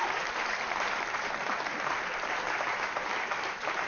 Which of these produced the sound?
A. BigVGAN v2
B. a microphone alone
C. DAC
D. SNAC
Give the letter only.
A